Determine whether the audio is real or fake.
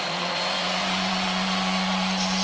fake